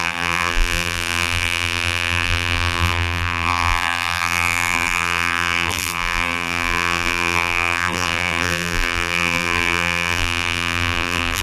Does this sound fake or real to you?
fake